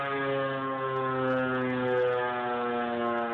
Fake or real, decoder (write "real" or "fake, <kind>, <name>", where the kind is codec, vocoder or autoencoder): real